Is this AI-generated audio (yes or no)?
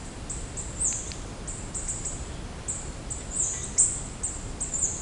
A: no